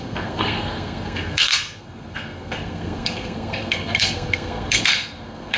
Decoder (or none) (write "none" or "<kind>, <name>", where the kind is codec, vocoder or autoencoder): codec, SNAC